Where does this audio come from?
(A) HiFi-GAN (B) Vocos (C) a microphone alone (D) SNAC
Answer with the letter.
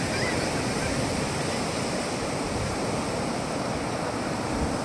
C